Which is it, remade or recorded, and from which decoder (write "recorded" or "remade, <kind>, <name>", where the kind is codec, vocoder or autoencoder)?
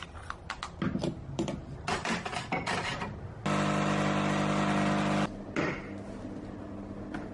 recorded